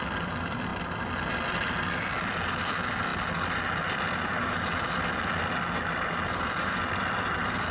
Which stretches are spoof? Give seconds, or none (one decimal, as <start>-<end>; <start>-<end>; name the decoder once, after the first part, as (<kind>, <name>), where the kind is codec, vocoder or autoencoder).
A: 0.0-0.7 (vocoder, BigVGAN v2); 2.6-7.7